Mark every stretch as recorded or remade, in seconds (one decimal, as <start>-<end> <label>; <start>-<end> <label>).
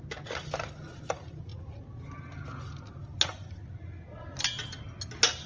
0.0-5.5 recorded